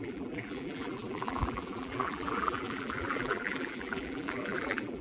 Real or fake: fake